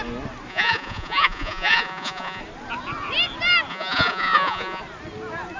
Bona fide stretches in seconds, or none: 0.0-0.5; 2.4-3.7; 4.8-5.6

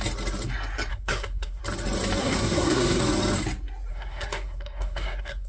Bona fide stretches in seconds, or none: 0.0-0.9; 1.6-2.2; 3.0-3.9